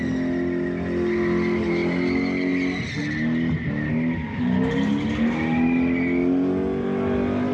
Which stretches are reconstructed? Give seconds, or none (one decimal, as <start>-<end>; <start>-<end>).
none